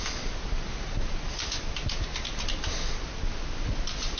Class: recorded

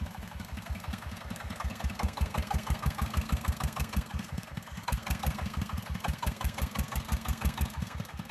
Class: remade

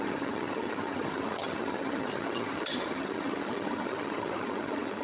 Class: remade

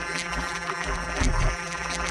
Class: remade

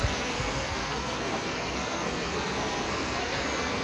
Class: remade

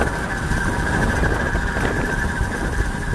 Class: recorded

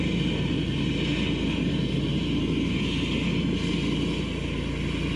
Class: recorded